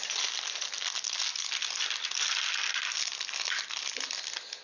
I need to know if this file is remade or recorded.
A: recorded